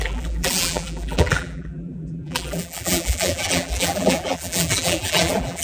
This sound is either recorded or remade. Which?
remade